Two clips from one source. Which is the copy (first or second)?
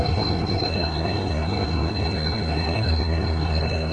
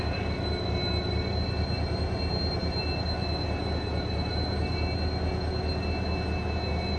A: first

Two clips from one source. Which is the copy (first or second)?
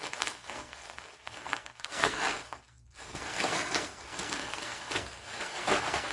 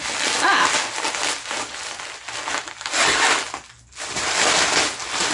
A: first